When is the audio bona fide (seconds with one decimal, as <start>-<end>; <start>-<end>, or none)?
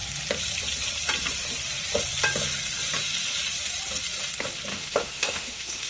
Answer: 0.0-4.7